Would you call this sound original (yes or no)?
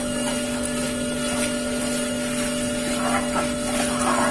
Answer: yes